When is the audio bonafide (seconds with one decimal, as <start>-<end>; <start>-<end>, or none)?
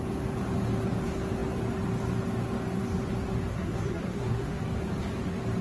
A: 0.0-3.5; 4.6-5.6